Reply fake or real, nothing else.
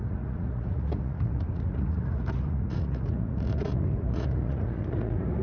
fake